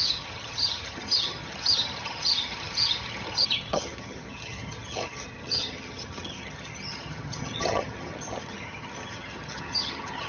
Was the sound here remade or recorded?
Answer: remade